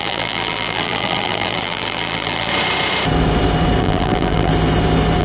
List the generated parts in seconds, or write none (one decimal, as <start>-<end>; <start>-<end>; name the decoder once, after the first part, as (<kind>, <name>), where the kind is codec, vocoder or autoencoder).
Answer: 0.0-2.5 (vocoder, BigVGAN v2); 3.8-4.5